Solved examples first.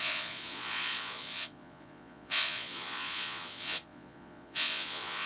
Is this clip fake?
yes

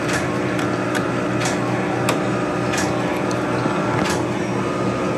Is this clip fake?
no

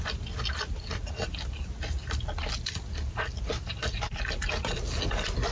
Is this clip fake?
no